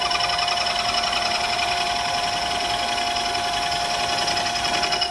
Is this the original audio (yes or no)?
yes